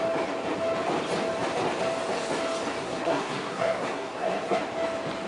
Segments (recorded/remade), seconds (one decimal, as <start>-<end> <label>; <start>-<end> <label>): 0.0-2.8 recorded; 2.8-4.6 remade; 4.6-5.3 recorded